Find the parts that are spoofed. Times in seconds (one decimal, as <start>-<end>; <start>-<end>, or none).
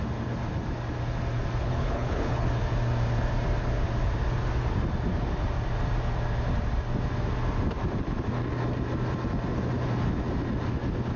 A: 1.6-2.5